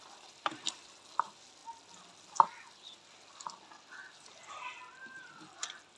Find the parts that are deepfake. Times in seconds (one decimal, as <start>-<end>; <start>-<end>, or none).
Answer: none